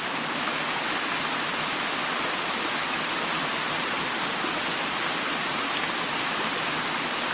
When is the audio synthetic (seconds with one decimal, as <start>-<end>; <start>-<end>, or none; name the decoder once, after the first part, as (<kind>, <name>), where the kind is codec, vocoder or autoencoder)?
3.1-5.8 (vocoder, BigVGAN v2)